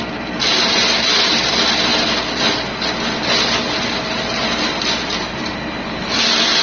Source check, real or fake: real